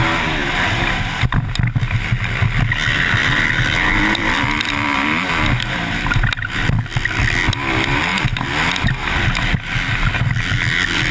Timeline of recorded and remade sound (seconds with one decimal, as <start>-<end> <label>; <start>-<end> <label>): 0.0-11.1 recorded